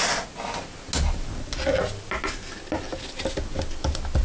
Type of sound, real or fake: real